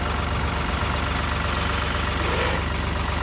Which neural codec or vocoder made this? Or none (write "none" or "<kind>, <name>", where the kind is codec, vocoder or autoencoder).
none